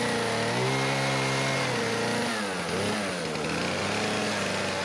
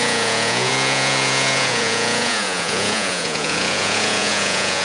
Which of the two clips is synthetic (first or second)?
second